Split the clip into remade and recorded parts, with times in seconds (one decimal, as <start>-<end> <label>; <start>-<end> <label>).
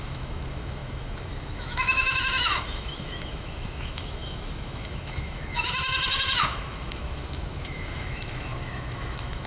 0.0-9.5 remade